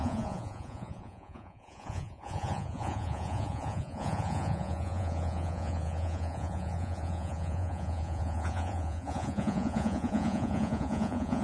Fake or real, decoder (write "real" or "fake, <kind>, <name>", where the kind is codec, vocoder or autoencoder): fake, vocoder, Vocos